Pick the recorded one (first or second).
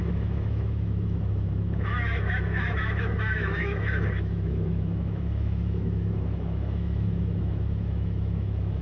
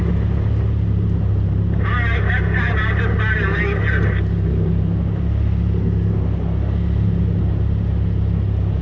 second